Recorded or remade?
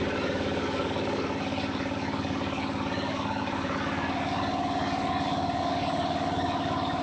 remade